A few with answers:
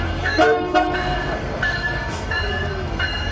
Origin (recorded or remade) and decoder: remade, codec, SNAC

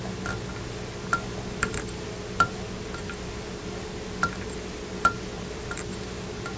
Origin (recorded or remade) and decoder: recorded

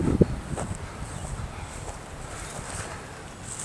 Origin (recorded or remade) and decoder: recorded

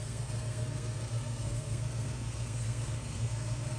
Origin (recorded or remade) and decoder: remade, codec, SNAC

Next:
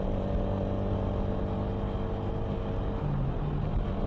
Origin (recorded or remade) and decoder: recorded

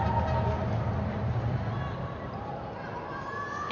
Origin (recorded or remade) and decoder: recorded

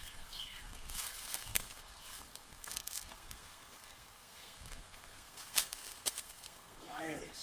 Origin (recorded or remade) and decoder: remade, codec, SNAC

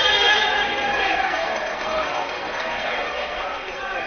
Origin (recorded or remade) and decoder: remade, codec, SNAC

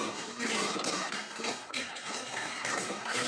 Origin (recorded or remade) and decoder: remade, codec, SNAC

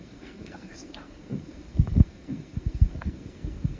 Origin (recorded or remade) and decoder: remade, codec, SNAC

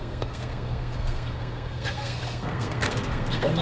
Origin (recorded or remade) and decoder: remade, codec, SNAC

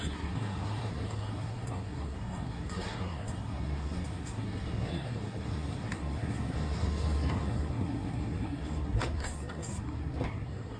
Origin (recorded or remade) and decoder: remade, codec, SNAC